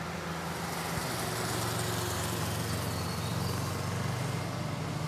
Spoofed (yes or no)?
no